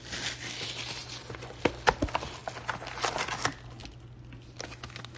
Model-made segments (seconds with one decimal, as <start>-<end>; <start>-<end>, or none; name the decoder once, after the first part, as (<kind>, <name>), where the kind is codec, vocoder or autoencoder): 1.0-1.6 (vocoder, Vocos)